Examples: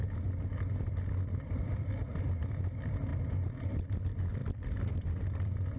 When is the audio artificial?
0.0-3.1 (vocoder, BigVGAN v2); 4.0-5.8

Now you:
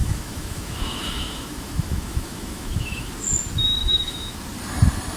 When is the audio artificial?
0.0-3.1 (autoencoder, DAC-VAE); 3.8-4.4

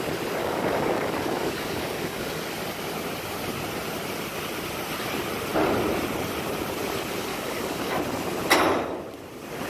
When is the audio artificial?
0.4-2.4 (codec, DAC); 7.3-8.0

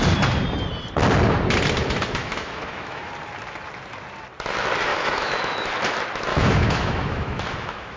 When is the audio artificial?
2.2-3.1 (autoencoder, DAC-VAE); 4.9-5.7; 6.3-8.0

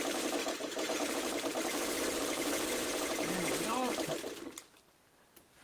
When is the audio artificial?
0.4-1.1 (vocoder, Vocos); 2.9-3.5

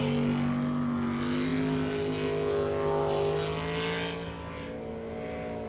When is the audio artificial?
none

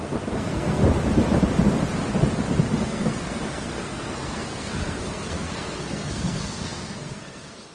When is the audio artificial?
0.0-0.8 (codec, SNAC); 2.8-7.7

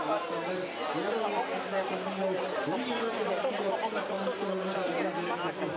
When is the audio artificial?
none